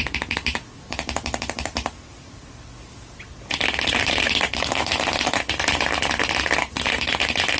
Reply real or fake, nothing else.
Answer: fake